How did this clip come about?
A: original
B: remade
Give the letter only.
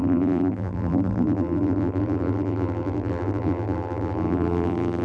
B